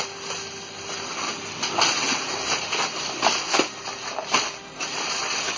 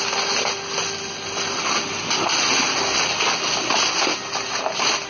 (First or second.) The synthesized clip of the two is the first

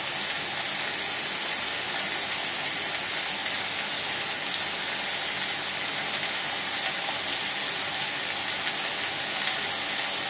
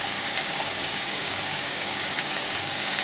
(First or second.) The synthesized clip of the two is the second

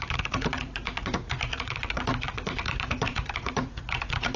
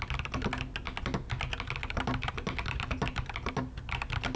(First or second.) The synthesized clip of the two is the first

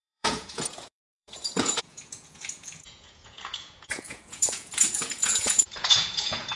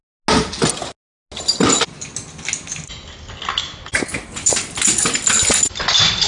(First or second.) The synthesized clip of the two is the first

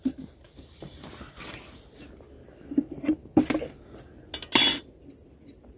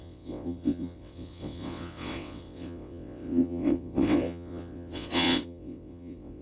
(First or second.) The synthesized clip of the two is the second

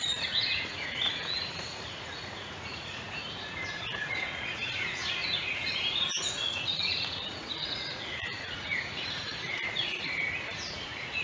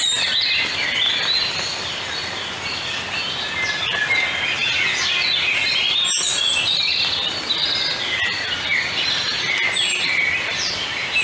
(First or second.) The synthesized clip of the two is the first